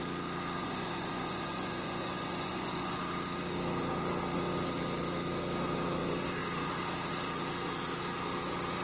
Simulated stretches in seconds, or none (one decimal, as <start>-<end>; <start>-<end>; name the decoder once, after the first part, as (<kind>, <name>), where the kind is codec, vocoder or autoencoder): 0.6-3.0 (vocoder, Vocos)